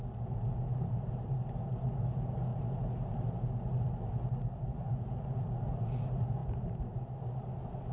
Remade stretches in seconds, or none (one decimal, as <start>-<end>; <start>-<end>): 0.7-1.7

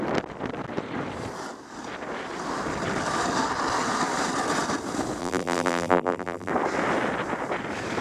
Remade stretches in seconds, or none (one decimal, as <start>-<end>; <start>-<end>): 5.2-6.5

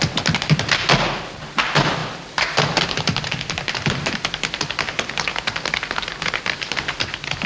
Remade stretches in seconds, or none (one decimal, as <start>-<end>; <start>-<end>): 2.0-4.6